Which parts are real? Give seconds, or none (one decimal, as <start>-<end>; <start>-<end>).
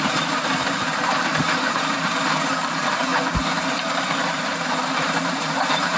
3.1-3.7